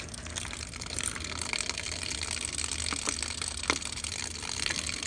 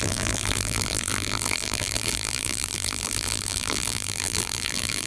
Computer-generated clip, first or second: second